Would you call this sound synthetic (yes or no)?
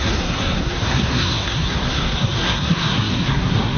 yes